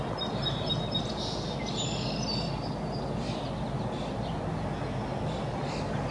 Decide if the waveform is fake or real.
real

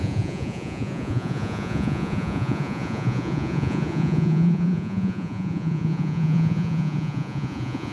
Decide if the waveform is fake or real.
fake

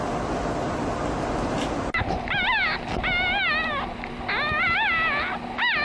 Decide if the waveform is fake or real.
real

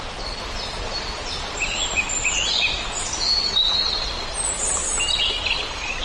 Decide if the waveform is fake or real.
real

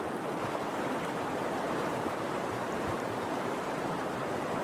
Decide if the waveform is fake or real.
fake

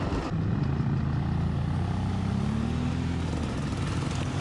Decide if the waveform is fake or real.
real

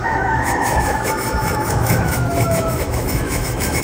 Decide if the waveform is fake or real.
fake